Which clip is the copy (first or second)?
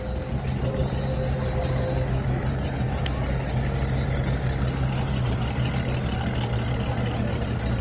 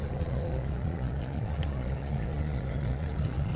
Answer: second